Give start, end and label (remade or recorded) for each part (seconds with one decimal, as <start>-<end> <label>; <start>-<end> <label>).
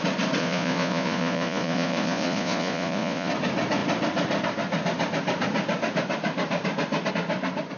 0.0-0.4 recorded; 0.4-3.3 remade; 3.3-7.8 recorded